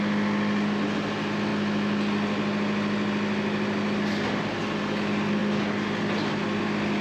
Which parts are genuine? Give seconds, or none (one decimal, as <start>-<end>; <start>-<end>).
0.0-7.0